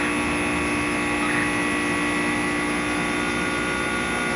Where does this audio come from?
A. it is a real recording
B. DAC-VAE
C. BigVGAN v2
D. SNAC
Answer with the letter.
A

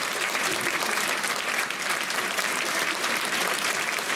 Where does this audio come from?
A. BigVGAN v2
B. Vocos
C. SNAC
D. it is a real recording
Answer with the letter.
A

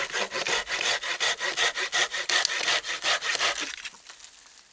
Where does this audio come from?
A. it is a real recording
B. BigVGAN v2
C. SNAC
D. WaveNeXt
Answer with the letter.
A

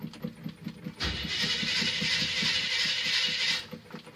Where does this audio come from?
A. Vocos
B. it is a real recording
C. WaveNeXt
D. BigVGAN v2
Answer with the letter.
B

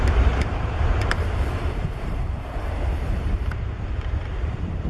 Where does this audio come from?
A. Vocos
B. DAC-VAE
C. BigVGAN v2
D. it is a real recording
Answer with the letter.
C